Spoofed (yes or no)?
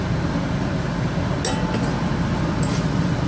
no